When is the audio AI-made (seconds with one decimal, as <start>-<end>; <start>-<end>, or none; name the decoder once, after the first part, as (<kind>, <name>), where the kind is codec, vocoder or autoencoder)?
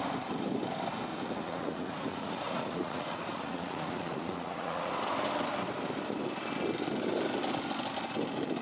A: 1.1-4.9 (vocoder, Vocos)